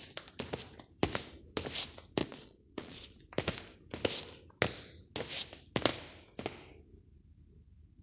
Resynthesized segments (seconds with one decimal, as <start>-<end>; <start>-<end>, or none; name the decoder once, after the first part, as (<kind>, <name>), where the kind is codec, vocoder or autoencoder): 2.2-3.2 (vocoder, Vocos)